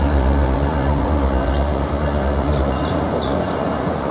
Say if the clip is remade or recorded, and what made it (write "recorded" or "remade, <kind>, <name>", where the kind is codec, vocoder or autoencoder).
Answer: remade, vocoder, Vocos